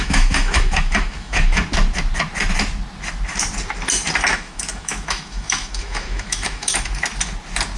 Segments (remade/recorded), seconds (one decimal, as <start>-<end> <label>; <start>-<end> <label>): 0.0-1.6 remade; 1.6-4.3 recorded; 4.3-6.9 remade; 6.9-7.8 recorded